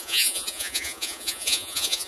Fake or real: fake